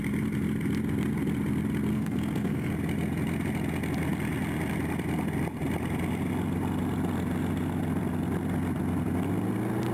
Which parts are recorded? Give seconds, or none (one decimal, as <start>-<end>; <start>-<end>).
0.0-1.9; 2.7-9.9